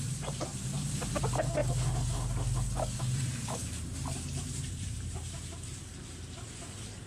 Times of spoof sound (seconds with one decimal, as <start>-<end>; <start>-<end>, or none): 0.0-1.6; 3.0-7.1